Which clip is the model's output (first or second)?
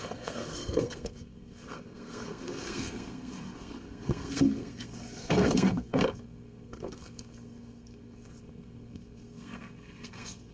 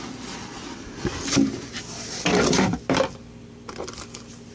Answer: first